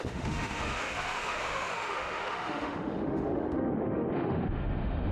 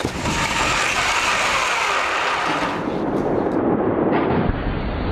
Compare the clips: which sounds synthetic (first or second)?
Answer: first